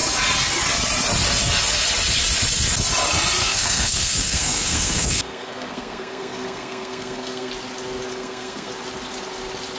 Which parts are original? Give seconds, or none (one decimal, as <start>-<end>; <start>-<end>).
0.0-3.4; 7.5-8.1; 8.7-9.8

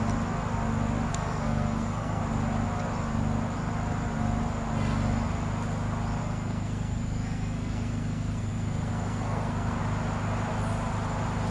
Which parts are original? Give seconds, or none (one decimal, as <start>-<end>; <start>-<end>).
0.0-1.1; 2.2-6.2; 9.8-11.5